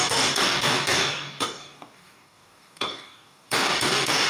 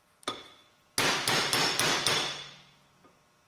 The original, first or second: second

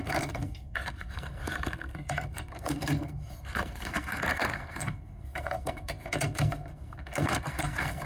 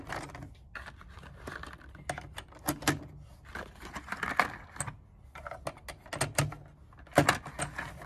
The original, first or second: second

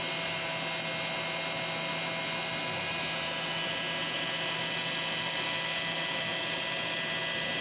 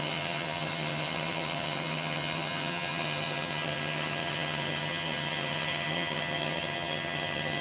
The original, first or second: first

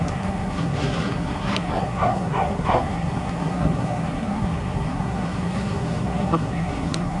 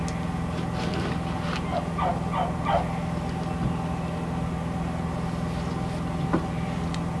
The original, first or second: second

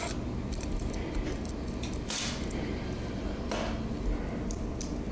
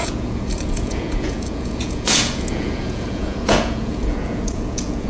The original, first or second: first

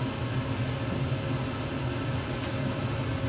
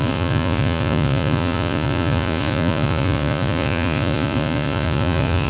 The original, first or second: first